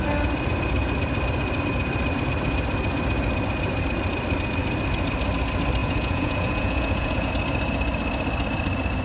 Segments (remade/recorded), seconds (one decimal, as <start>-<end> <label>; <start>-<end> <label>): 0.0-5.8 recorded; 5.8-7.3 remade; 7.3-9.0 recorded